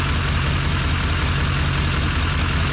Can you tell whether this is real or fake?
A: real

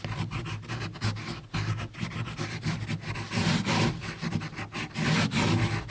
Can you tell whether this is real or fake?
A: real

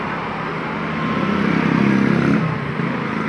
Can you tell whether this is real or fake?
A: real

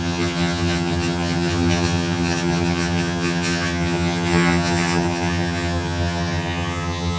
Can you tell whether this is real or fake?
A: fake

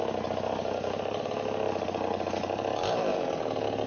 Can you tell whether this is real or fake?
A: real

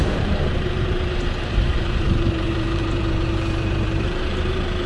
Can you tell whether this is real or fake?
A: fake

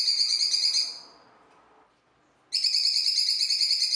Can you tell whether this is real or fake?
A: real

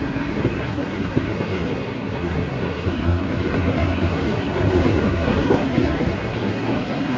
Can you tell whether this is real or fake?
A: fake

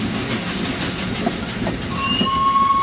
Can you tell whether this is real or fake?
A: real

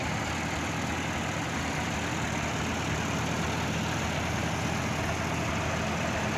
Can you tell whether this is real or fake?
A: real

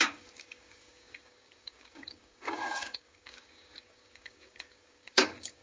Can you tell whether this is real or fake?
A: fake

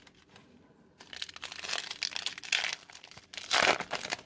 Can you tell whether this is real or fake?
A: real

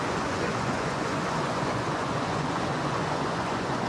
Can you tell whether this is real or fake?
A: fake